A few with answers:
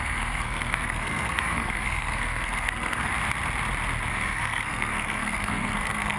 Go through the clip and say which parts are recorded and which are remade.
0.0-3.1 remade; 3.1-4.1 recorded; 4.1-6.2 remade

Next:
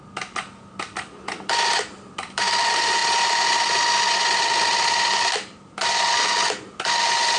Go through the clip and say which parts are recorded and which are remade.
0.0-7.4 recorded

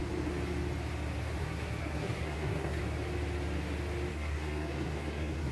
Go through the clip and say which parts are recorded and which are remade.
0.0-1.4 recorded; 1.4-2.8 remade; 2.8-4.1 recorded; 4.1-5.5 remade

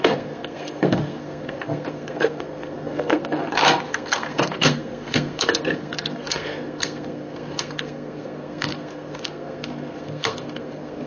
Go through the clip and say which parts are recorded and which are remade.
0.0-11.1 remade

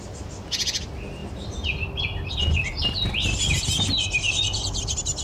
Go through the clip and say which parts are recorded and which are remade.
0.0-5.2 recorded

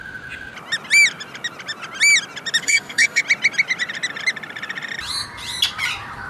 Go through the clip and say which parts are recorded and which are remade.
0.0-2.6 recorded; 2.6-3.2 remade; 3.2-6.3 recorded